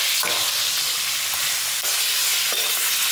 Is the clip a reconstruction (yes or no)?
no